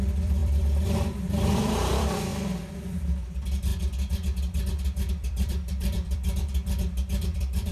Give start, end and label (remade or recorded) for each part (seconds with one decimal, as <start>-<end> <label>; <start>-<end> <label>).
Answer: 0.0-2.3 remade; 2.3-3.3 recorded; 3.3-3.7 remade; 3.7-5.1 recorded; 5.1-7.7 remade